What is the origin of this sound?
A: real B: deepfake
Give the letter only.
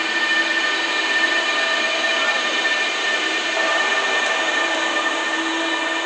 B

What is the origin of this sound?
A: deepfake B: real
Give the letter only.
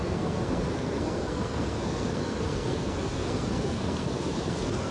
A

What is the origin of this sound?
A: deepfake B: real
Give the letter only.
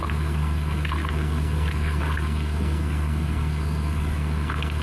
A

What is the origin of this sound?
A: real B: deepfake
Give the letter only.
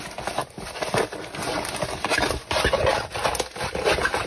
A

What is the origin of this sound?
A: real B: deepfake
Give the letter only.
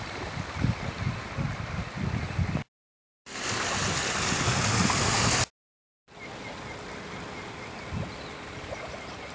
A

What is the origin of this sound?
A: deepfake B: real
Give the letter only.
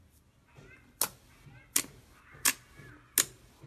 B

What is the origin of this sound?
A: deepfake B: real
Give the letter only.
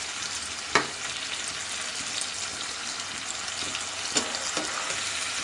B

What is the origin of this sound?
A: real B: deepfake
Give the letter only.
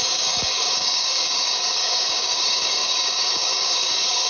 B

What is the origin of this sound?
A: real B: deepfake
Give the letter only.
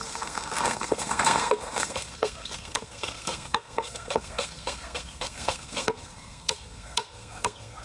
B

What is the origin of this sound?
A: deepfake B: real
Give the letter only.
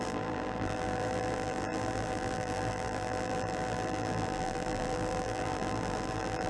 A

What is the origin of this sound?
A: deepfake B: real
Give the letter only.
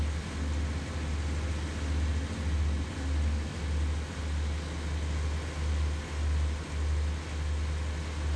B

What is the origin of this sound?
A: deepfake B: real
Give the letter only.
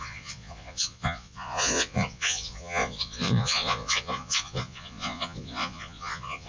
A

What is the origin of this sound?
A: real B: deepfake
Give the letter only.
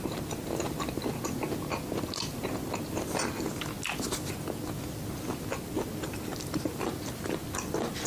A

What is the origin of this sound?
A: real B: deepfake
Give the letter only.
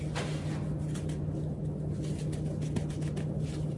A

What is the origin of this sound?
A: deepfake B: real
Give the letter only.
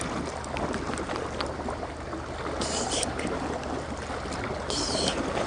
B